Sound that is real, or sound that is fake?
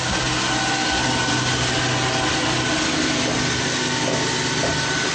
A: real